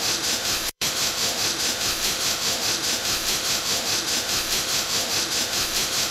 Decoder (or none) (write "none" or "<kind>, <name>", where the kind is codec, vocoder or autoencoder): autoencoder, DAC-VAE